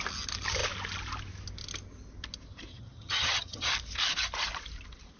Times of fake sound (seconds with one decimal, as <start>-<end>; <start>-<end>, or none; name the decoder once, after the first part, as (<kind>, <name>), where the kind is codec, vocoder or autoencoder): 2.7-3.7 (vocoder, HiFi-GAN)